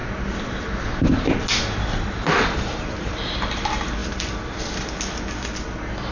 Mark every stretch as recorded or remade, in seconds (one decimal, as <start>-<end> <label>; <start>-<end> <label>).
0.0-6.1 recorded